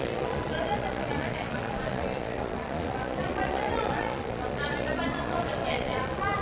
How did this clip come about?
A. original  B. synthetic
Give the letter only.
B